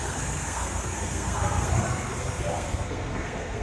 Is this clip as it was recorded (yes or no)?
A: no